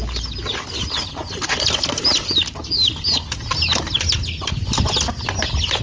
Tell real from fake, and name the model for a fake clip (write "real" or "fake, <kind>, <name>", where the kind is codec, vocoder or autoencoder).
real